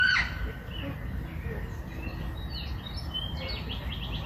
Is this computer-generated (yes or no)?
no